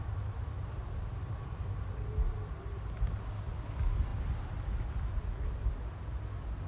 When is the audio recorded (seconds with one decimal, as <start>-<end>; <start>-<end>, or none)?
0.0-6.7